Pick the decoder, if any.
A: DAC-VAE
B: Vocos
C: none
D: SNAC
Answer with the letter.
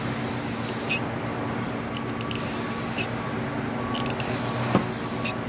C